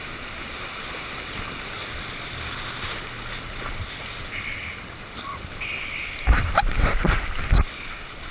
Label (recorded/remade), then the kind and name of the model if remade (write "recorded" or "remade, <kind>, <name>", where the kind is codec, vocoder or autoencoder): recorded